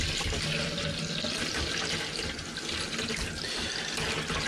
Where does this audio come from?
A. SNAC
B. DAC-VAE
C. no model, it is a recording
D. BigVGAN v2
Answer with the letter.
C